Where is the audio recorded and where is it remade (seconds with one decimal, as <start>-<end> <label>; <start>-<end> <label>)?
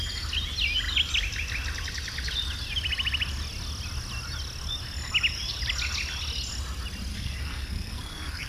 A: 0.0-7.1 recorded; 7.1-8.5 remade